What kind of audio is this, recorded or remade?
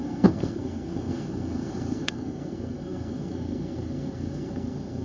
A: remade